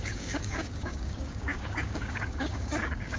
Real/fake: fake